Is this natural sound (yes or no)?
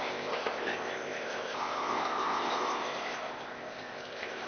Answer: no